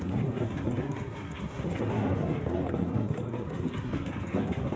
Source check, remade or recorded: remade